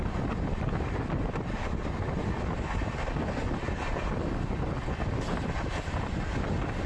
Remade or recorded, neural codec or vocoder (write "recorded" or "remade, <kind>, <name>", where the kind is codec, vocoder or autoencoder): recorded